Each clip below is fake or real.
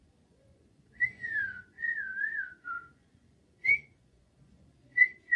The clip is fake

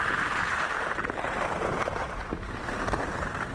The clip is fake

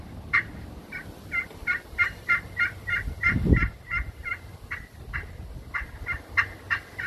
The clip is real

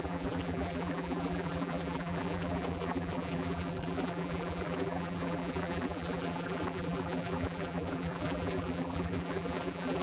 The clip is fake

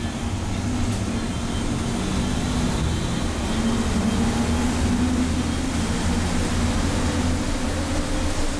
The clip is real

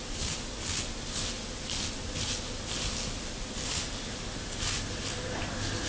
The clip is real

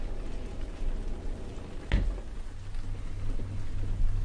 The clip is real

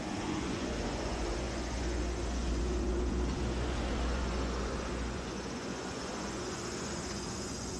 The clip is fake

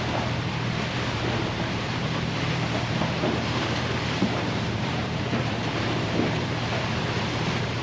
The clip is fake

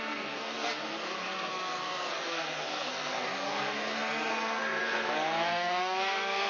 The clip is fake